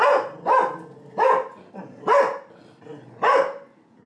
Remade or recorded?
recorded